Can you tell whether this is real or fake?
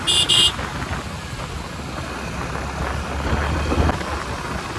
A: real